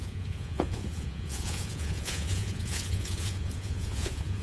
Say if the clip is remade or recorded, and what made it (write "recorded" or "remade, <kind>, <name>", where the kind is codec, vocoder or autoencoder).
remade, vocoder, Vocos